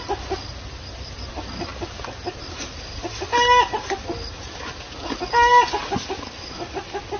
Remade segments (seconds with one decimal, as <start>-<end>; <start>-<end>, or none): none